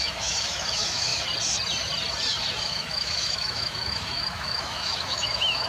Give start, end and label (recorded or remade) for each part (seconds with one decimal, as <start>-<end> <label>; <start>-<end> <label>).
0.0-1.1 remade; 1.1-2.6 recorded; 2.6-5.7 remade